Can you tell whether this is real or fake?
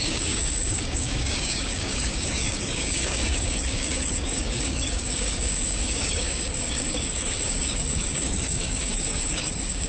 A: fake